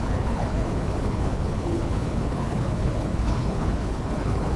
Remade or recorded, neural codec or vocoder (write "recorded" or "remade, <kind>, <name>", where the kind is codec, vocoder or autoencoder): remade, codec, HILCodec